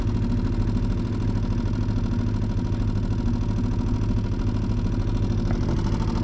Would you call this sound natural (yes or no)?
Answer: yes